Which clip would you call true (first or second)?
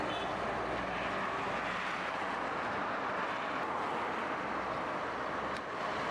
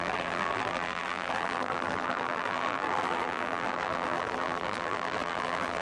first